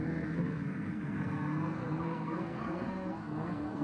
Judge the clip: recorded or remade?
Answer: remade